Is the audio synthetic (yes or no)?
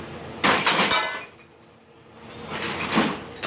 no